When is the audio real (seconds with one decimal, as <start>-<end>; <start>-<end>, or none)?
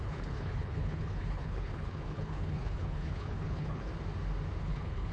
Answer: 3.9-4.6